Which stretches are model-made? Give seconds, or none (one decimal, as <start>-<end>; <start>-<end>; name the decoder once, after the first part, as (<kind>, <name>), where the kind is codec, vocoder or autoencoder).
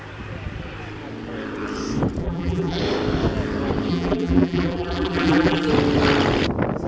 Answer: 2.2-2.8 (vocoder, BigVGAN v2); 3.9-5.7